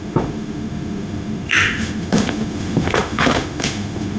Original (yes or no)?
no